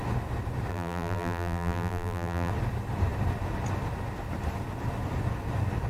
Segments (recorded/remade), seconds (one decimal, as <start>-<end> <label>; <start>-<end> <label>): 0.0-0.7 recorded; 0.7-2.5 remade; 2.5-5.9 recorded